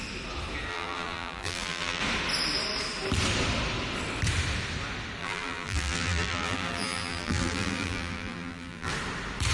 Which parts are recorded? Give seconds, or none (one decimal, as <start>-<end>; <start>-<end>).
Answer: 0.0-0.7; 2.0-5.2; 8.9-9.5